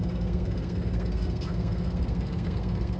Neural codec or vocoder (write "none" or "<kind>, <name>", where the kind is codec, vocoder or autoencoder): codec, SNAC